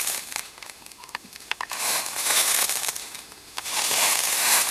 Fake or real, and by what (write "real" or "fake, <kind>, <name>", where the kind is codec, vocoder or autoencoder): fake, autoencoder, DAC-VAE